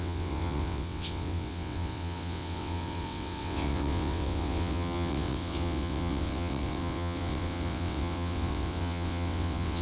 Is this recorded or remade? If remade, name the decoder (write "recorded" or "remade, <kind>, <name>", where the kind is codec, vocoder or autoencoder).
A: remade, vocoder, WaveNeXt